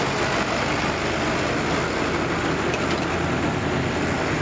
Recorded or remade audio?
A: recorded